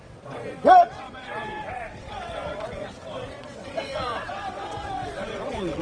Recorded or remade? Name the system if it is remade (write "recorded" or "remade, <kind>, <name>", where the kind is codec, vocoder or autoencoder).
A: remade, vocoder, WaveNeXt